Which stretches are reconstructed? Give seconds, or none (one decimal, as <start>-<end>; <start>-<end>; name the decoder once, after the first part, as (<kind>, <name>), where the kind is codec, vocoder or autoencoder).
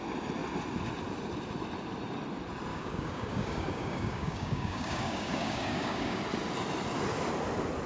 2.7-6.2 (codec, DAC)